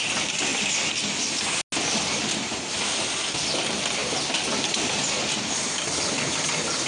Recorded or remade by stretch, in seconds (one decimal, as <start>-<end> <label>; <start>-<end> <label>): 0.0-4.0 recorded; 4.0-5.2 remade; 5.2-6.9 recorded